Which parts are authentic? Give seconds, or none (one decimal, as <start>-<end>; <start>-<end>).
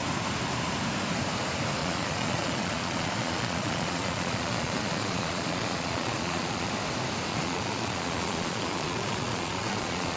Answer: 0.0-1.8; 6.7-7.3